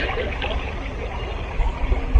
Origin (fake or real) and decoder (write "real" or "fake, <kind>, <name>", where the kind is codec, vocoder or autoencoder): real